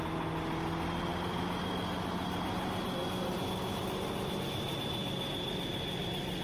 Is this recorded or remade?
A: recorded